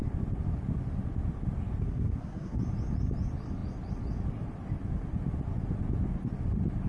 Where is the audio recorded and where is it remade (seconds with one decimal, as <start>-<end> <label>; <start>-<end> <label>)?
0.0-1.8 recorded; 1.8-2.6 remade; 2.6-6.9 recorded

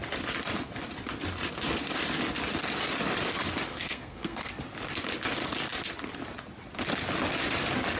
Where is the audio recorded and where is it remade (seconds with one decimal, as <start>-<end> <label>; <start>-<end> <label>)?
0.0-3.7 recorded; 3.7-4.5 remade; 4.5-8.0 recorded

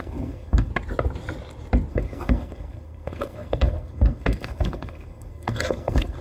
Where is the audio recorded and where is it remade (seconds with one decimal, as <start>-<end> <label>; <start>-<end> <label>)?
0.0-0.7 remade; 0.7-1.9 recorded; 1.9-6.2 remade

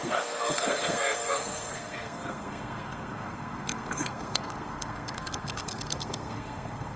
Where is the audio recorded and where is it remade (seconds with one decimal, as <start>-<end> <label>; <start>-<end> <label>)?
0.0-7.0 remade